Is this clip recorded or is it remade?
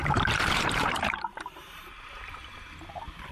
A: remade